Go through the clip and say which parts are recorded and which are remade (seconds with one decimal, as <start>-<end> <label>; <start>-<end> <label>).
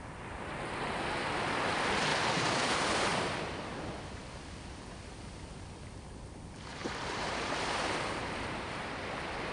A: 0.0-2.1 recorded; 2.1-3.4 remade; 3.4-6.7 recorded; 6.7-8.7 remade; 8.7-9.5 recorded